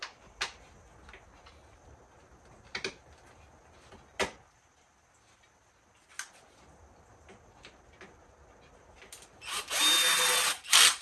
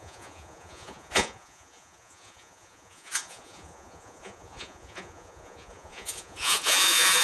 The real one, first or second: first